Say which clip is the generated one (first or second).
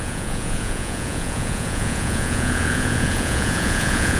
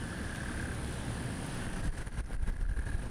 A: first